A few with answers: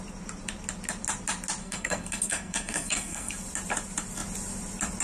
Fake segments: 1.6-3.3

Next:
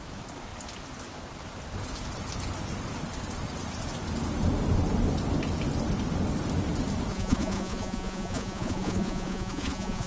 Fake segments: 7.1-10.1

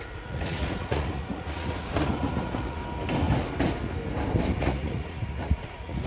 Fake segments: 0.0-2.8; 4.6-6.1

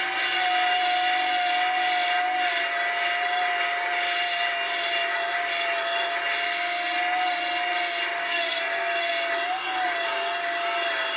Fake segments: 8.2-9.1

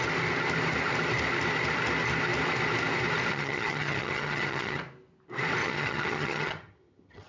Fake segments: 3.3-4.8; 5.6-7.3